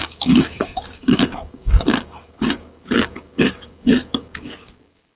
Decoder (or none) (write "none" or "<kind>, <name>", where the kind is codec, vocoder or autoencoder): codec, DAC